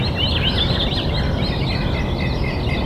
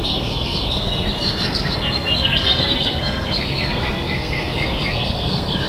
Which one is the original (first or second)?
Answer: first